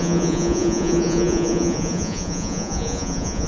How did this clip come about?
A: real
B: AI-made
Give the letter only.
B